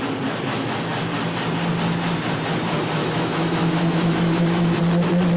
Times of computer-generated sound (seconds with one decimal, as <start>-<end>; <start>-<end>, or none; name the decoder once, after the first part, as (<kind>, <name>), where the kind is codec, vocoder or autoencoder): 3.0-4.8 (autoencoder, DAC-VAE)